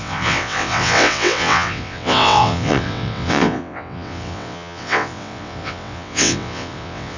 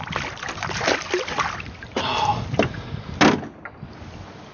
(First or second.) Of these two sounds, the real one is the second